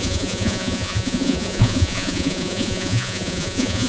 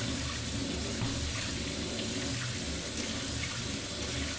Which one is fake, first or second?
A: first